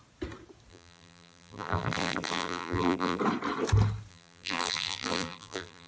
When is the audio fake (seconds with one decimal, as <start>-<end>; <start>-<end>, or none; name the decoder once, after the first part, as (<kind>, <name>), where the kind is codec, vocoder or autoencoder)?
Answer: 0.7-3.2 (vocoder, BigVGAN v2); 4.1-5.9